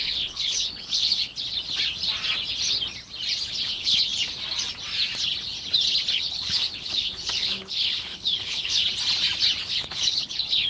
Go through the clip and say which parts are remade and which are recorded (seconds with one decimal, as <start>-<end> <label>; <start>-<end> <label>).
0.0-1.3 remade; 1.3-3.6 recorded; 3.6-4.1 remade; 4.1-6.2 recorded; 6.2-8.8 remade; 8.8-9.6 recorded; 9.6-10.7 remade